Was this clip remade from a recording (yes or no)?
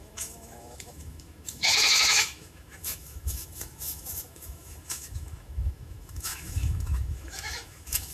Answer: yes